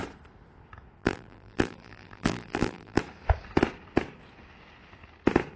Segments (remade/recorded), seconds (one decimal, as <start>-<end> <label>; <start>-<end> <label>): 0.0-1.0 recorded; 1.0-3.0 remade; 3.0-5.6 recorded